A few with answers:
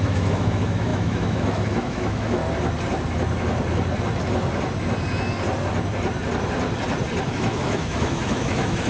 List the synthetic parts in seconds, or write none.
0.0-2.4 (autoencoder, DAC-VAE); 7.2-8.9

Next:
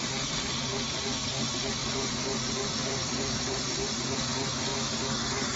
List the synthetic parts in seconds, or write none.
1.8-4.3 (vocoder, BigVGAN v2)

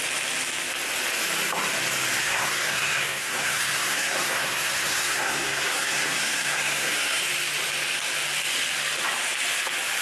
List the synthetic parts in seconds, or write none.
2.2-7.2 (codec, SNAC)

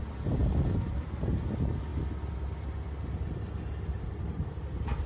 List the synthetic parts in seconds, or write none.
none

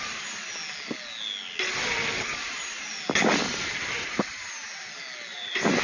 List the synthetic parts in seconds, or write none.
2.4-3.0 (vocoder, BigVGAN v2); 5.3-5.8

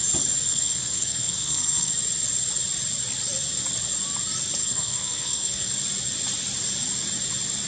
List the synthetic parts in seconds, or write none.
0.5-1.9 (codec, SNAC); 4.6-5.7

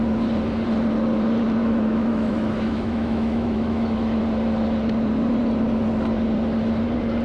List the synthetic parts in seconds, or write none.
1.6-4.2 (autoencoder, DAC-VAE)